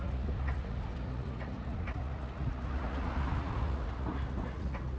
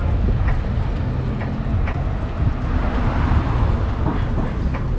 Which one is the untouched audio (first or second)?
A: second